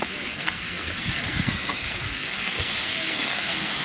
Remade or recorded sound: remade